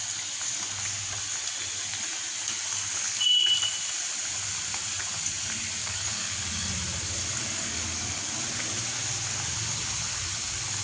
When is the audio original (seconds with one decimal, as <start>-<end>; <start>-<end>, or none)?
0.0-5.8; 6.7-7.4; 8.3-10.8